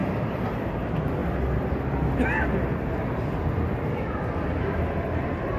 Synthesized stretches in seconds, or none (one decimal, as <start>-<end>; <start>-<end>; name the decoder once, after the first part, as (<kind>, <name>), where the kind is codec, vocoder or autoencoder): 0.0-1.2 (vocoder, BigVGAN v2); 4.6-5.6